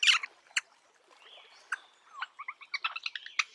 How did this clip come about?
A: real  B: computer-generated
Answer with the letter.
A